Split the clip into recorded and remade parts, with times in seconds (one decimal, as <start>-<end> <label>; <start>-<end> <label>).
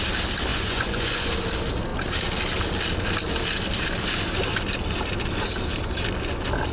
0.0-0.5 recorded; 0.5-1.3 remade; 1.3-6.7 recorded